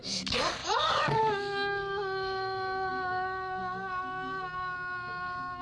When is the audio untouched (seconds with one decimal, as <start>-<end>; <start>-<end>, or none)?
0.0-0.6; 1.2-5.6